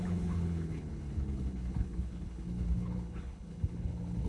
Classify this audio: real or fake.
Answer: fake